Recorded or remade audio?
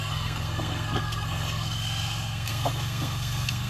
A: remade